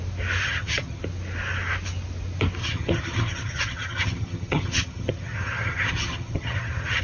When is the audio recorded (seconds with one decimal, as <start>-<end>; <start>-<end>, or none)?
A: 0.0-0.4; 1.0-2.6